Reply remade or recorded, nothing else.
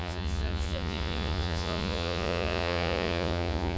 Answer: remade